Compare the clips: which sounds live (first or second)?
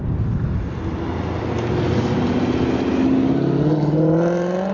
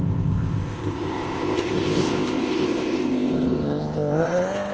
first